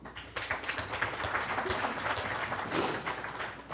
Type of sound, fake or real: real